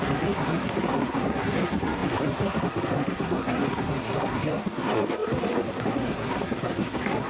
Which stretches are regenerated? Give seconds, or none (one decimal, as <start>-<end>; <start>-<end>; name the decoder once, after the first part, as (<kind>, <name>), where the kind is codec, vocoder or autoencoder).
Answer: 0.0-7.3 (codec, SNAC)